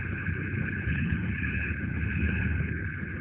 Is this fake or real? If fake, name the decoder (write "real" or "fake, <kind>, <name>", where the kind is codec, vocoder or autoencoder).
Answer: fake, codec, HILCodec